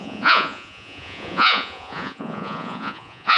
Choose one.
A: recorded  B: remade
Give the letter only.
B